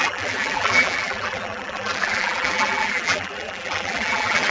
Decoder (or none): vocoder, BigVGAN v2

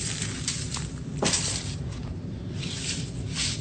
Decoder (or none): vocoder, BigVGAN v2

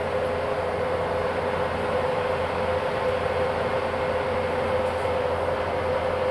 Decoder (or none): none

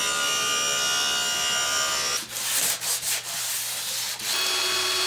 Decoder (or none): none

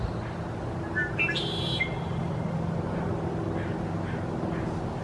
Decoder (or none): none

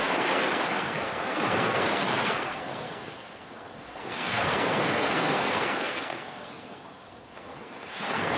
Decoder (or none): codec, SNAC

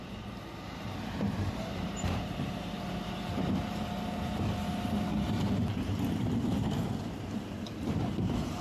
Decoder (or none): vocoder, BigVGAN v2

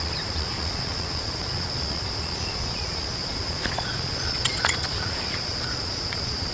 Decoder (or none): vocoder, Vocos